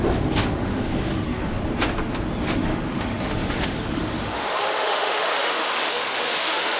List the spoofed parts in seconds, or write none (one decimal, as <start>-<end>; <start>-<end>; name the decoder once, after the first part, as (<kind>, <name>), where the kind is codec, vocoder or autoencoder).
0.0-1.6 (autoencoder, DAC-VAE); 2.4-6.8